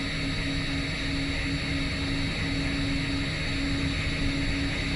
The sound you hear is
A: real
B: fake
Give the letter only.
A